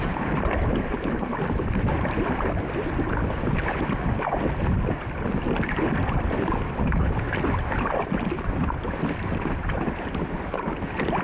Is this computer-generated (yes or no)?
no